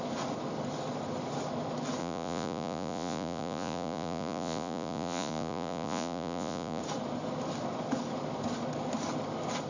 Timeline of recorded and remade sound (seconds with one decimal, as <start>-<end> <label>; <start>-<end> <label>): 0.0-2.0 recorded; 2.0-6.8 remade; 6.8-9.7 recorded